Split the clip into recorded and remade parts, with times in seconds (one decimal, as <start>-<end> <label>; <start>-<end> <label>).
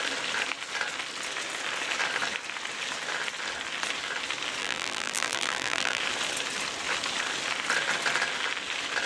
0.0-4.6 recorded; 4.6-6.0 remade; 6.0-9.1 recorded